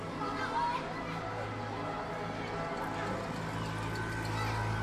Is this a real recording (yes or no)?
yes